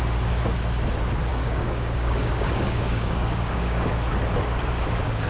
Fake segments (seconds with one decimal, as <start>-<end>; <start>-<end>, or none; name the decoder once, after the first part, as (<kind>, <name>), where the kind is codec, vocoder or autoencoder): 1.3-3.9 (codec, DAC)

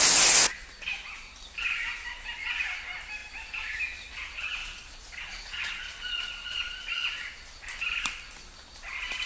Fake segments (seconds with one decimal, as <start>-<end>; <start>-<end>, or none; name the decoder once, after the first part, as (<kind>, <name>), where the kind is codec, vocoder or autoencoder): 4.6-7.3 (vocoder, Vocos)

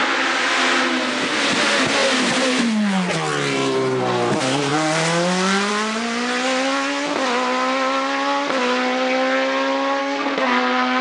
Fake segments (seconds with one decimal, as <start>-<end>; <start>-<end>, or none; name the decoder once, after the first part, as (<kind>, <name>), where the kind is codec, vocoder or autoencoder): 10.0-11.0 (codec, SNAC)

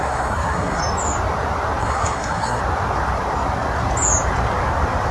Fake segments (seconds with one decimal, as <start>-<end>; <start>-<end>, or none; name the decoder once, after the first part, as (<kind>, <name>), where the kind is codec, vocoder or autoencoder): 0.0-0.8 (codec, SNAC); 1.8-2.6

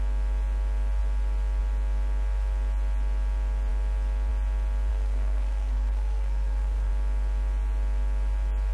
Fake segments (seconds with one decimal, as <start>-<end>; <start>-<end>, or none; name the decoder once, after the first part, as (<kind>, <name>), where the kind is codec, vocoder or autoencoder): 4.9-6.9 (codec, SNAC)

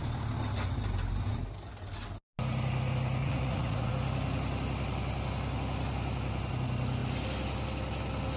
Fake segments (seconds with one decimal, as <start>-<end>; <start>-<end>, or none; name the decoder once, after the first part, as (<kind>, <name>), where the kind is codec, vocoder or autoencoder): 3.2-3.9 (vocoder, Vocos)

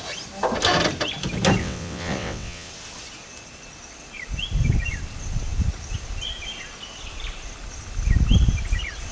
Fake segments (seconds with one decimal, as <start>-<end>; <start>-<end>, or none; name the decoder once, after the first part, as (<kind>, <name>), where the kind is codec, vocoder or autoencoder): 1.6-2.7 (vocoder, WaveNeXt)